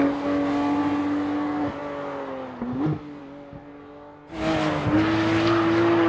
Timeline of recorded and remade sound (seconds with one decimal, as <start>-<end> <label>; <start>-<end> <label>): 0.0-6.1 recorded